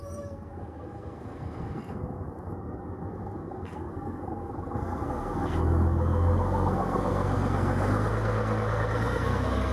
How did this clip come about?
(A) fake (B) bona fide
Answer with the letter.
A